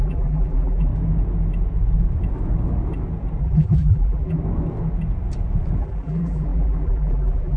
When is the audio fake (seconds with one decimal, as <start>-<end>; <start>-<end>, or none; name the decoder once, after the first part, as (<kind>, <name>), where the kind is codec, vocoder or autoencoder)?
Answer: 0.0-0.9 (vocoder, BigVGAN v2); 3.4-4.4; 5.8-7.6